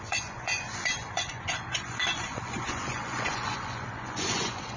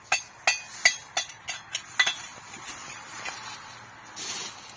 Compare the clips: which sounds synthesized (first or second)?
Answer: first